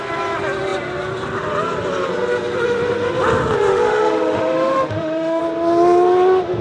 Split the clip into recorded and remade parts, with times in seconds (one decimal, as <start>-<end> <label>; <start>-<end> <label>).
0.0-3.7 recorded; 3.7-5.4 remade; 5.4-6.6 recorded